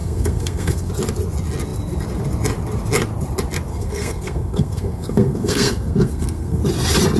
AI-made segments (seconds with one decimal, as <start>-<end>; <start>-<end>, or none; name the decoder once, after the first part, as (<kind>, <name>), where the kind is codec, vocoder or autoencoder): 0.0-0.9 (codec, SNAC); 3.7-6.6

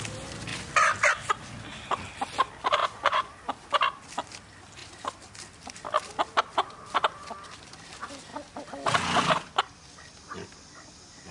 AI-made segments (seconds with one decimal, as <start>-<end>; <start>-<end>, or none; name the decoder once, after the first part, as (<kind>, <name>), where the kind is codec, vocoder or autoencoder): 2.8-3.3 (vocoder, Vocos)

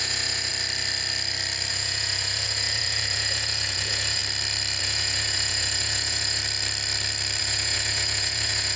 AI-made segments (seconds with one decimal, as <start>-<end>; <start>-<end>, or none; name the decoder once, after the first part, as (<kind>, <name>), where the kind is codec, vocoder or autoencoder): 0.0-0.5 (vocoder, Vocos); 1.7-4.2; 4.8-6.4; 7.4-8.8

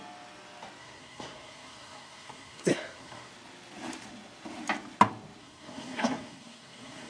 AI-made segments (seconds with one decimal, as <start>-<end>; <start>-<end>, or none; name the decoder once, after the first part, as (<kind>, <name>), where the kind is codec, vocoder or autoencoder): 0.8-3.3 (codec, SNAC); 5.4-7.1

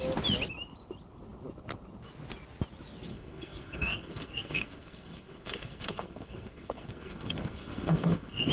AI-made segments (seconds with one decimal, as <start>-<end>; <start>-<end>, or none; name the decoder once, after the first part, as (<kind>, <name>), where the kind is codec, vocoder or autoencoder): 3.1-8.5 (codec, SNAC)

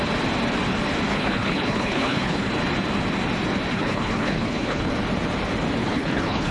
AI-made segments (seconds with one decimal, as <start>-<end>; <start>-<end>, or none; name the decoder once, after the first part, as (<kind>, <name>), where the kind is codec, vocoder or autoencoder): 1.1-2.5 (codec, HILCodec); 3.7-4.9; 5.8-6.5

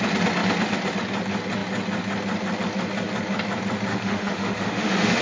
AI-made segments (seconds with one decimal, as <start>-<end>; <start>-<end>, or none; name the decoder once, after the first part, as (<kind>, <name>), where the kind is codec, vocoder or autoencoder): 3.9-5.2 (autoencoder, DAC-VAE)